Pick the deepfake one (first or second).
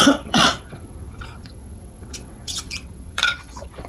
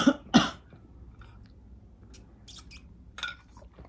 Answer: first